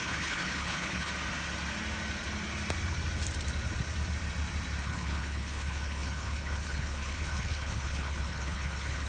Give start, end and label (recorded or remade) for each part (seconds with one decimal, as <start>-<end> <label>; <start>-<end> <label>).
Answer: 0.0-1.1 remade; 1.1-4.8 recorded; 4.8-9.1 remade